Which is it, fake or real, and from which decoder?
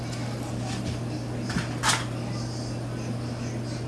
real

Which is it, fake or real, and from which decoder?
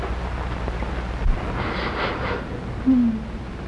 real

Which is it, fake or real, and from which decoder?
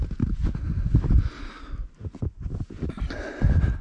real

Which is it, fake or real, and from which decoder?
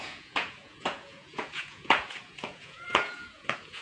fake, vocoder, Vocos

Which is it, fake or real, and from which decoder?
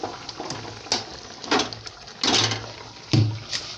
real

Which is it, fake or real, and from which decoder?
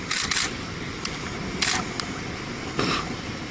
real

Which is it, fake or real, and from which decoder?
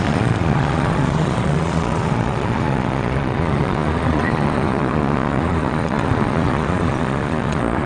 fake, vocoder, Vocos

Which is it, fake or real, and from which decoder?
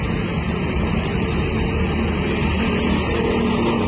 real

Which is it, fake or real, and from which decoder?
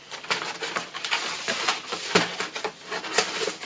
real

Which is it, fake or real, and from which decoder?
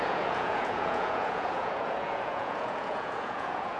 fake, vocoder, Vocos